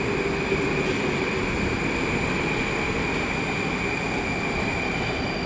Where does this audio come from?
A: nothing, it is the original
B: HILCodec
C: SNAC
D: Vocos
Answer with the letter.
A